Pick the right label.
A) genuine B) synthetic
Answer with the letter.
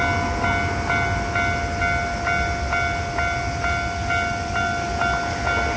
A